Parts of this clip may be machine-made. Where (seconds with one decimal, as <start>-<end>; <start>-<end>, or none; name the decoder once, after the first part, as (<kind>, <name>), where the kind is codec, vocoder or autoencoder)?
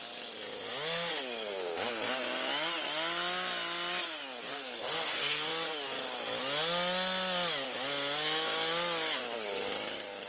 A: 4.5-5.5 (codec, SNAC)